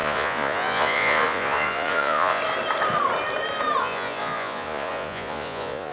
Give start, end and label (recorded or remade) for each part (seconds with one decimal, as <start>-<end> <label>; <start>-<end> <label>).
0.0-2.4 remade; 2.4-3.8 recorded; 3.8-5.9 remade